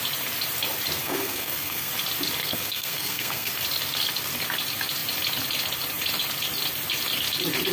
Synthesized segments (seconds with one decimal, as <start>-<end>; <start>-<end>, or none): 1.0-1.9; 2.4-3.5